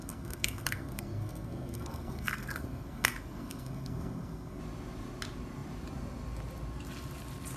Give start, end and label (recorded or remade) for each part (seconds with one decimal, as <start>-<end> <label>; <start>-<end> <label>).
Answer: 0.0-4.6 remade; 4.6-7.6 recorded